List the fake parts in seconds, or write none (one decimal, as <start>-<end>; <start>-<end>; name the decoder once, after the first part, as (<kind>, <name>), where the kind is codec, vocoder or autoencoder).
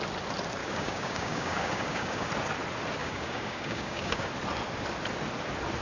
0.6-2.3 (codec, DAC); 3.0-4.3